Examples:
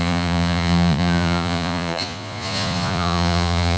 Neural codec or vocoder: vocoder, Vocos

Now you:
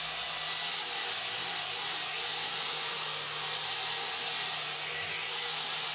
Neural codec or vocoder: none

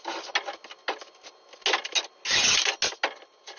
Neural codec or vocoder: none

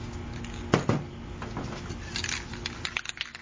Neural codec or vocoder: none